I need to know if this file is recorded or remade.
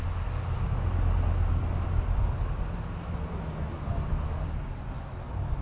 recorded